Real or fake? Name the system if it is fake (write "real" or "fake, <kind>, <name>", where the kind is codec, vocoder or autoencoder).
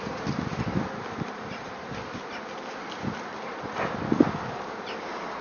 real